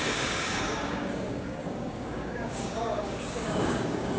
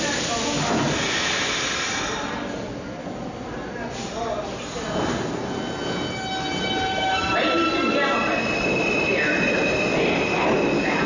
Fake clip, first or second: first